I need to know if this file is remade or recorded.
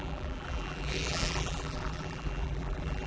remade